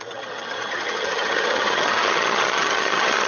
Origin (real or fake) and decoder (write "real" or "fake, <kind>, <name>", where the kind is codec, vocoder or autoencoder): fake, vocoder, HiFi-GAN